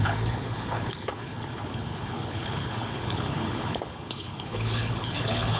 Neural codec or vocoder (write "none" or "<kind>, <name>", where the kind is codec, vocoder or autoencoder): codec, HILCodec